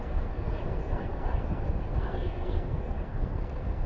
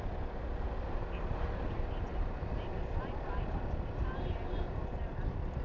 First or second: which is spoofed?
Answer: first